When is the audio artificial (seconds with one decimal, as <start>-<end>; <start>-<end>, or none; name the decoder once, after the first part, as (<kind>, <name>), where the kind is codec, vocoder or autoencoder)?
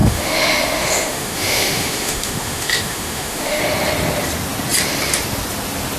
0.0-3.6 (autoencoder, DAC-VAE)